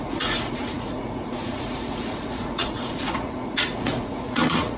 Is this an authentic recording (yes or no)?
no